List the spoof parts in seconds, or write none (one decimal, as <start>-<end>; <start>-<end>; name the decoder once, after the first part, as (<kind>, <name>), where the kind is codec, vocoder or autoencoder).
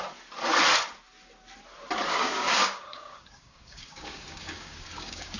2.1-5.4 (codec, DAC)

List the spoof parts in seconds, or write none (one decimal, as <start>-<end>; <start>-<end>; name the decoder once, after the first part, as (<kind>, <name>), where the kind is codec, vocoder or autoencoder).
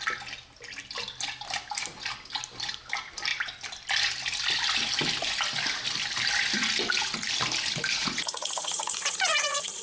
8.0-9.8 (vocoder, Vocos)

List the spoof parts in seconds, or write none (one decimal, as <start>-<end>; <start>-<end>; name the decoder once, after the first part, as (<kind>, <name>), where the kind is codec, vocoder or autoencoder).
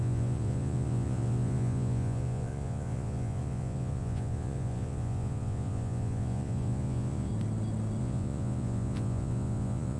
0.0-7.3 (vocoder, Vocos); 8.0-10.0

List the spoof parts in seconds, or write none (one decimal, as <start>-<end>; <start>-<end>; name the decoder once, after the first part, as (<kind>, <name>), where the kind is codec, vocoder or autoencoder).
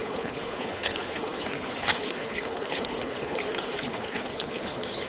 0.0-5.1 (codec, HILCodec)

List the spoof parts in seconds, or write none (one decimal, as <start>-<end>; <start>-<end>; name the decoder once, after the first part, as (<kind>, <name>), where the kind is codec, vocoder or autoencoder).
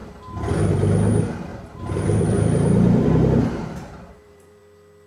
1.5-4.6 (vocoder, BigVGAN v2)